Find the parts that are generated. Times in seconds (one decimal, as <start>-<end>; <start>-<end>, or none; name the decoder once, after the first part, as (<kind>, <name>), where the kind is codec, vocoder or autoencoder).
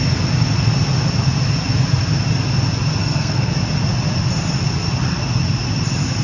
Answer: 3.0-3.5 (codec, SNAC)